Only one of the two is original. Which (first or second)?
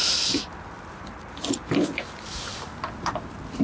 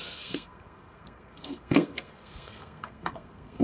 first